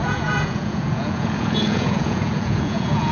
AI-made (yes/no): yes